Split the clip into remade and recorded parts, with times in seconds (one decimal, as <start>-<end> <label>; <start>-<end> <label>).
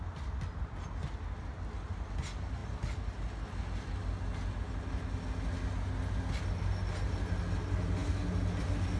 0.0-9.0 recorded